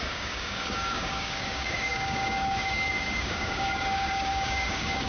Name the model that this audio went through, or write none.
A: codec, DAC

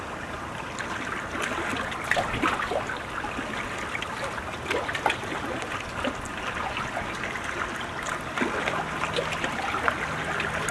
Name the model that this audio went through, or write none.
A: none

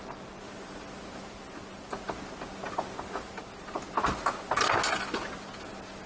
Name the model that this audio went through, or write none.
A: none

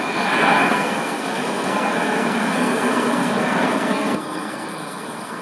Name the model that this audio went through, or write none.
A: codec, SNAC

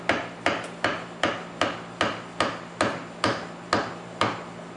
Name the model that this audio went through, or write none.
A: none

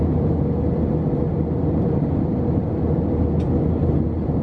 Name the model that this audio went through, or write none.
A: none